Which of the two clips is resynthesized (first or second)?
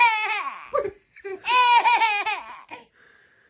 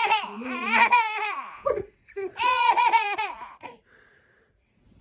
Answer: second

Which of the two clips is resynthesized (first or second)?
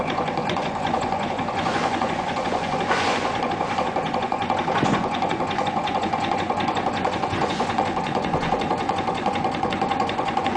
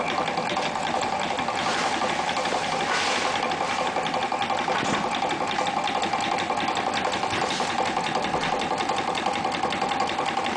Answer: first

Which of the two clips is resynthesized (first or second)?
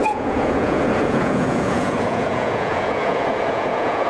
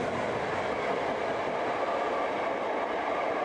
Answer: first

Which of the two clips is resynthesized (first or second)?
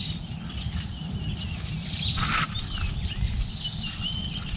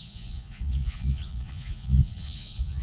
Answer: second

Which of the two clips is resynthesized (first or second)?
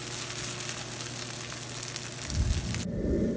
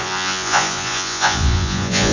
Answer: second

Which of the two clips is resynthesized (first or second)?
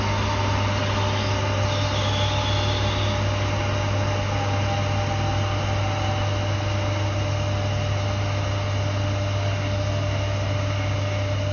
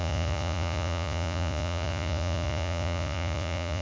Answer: second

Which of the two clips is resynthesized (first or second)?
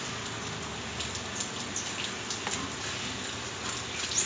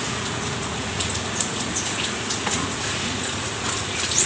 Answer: second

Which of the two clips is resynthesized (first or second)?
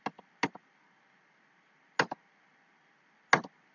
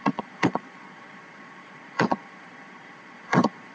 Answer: second